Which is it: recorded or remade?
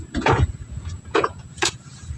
remade